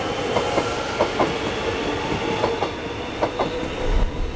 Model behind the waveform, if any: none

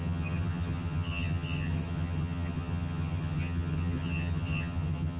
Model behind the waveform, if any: vocoder, HiFi-GAN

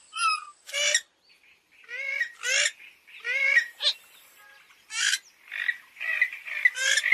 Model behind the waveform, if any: none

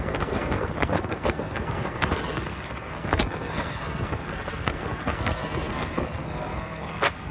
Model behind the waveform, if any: codec, SNAC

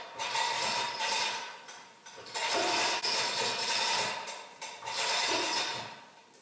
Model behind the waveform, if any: none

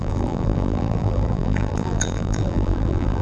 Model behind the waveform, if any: vocoder, BigVGAN v2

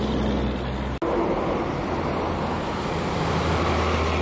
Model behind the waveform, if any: none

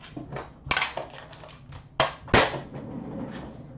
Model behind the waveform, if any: none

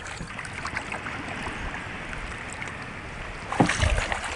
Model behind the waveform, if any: none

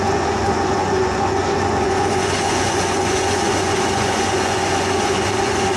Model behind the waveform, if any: vocoder, Vocos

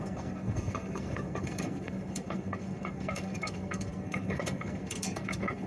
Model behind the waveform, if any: codec, SNAC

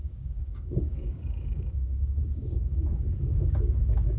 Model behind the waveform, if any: codec, DAC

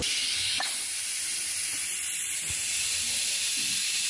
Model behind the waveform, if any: vocoder, BigVGAN v2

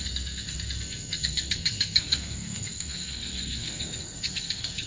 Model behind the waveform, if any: codec, SNAC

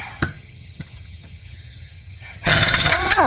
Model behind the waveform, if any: vocoder, HiFi-GAN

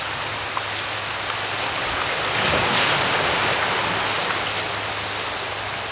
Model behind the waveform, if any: none